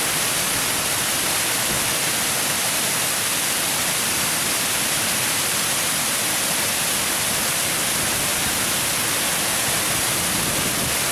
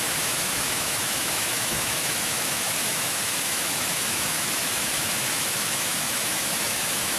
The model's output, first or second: second